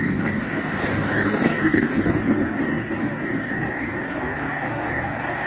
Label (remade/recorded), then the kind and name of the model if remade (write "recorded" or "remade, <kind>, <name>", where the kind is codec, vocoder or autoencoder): remade, codec, DAC